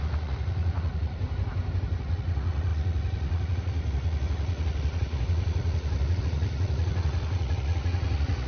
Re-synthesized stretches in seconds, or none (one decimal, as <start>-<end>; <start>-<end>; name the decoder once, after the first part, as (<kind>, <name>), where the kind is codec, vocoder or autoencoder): 0.0-1.2 (vocoder, Vocos); 1.9-8.5